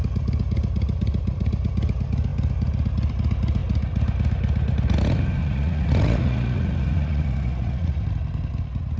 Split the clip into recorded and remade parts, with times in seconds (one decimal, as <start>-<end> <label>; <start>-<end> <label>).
0.0-5.4 recorded; 5.4-8.0 remade; 8.0-9.0 recorded